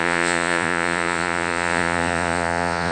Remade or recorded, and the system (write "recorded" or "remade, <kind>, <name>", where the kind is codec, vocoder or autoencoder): remade, vocoder, Vocos